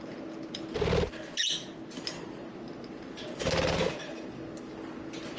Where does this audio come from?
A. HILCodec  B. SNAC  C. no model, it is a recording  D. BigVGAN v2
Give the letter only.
C